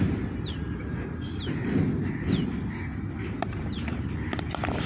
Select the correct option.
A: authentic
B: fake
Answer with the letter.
B